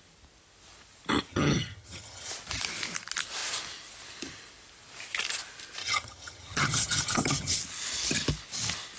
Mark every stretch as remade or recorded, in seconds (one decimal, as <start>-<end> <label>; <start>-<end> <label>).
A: 0.0-1.3 recorded; 1.3-2.3 remade; 2.3-5.8 recorded; 5.8-7.6 remade; 7.6-9.0 recorded